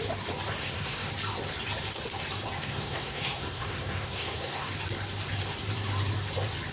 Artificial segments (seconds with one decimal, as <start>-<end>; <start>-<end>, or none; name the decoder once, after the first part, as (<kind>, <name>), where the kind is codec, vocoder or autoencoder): 0.6-1.1 (codec, SNAC); 2.6-4.7